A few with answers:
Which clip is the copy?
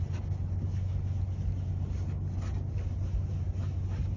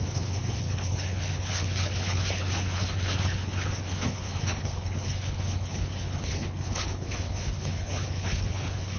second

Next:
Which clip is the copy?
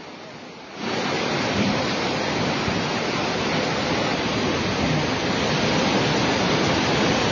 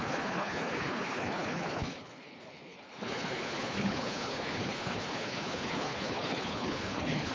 second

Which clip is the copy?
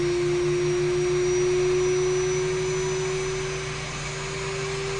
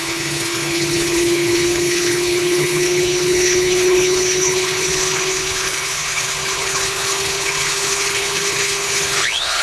second